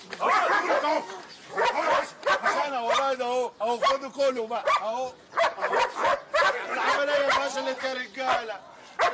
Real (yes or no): yes